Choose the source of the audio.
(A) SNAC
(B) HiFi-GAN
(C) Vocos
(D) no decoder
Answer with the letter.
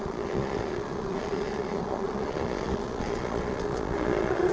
C